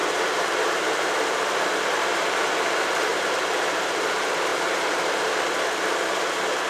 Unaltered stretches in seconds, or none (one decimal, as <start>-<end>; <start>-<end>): 4.0-4.5; 5.3-6.7